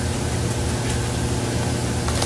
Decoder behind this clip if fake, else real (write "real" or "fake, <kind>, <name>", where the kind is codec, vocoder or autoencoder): real